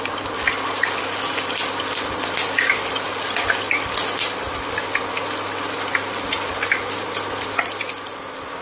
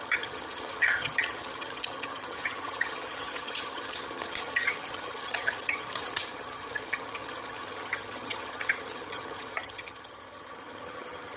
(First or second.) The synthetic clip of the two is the second